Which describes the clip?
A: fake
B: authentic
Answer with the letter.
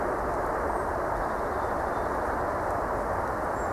B